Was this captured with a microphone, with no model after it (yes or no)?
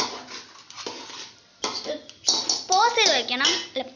yes